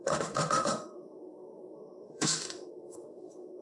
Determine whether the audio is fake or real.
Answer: fake